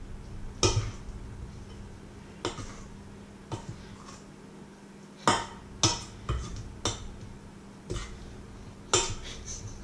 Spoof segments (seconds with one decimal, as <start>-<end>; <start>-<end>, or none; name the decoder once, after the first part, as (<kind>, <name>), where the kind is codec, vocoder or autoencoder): none